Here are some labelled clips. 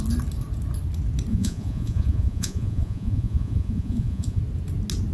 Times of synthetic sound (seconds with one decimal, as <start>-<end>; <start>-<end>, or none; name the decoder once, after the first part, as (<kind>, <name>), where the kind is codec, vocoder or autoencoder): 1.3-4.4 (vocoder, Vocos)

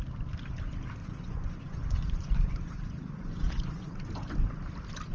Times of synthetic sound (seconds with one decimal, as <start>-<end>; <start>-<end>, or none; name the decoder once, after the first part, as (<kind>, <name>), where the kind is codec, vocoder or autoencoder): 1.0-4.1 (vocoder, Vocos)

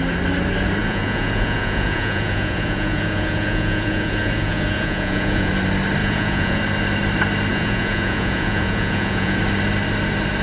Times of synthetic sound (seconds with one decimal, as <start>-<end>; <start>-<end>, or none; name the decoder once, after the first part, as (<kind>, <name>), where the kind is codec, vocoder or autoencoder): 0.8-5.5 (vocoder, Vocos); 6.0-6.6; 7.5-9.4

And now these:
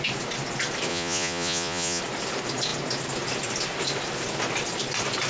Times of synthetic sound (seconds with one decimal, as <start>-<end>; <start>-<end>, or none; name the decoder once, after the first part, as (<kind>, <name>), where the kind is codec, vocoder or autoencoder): 0.9-2.0 (vocoder, Vocos)

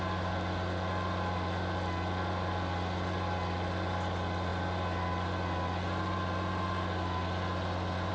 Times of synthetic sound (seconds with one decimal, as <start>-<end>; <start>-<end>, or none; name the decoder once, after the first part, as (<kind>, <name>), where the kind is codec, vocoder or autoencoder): none

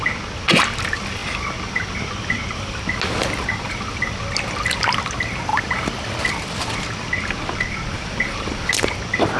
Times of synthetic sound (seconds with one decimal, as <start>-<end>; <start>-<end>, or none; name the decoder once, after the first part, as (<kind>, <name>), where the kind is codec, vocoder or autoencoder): none